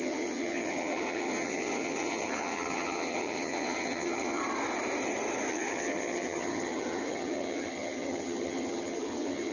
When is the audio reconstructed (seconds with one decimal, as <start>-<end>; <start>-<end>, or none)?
0.0-4.4; 5.5-9.5